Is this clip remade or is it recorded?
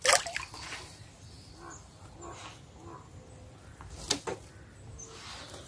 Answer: recorded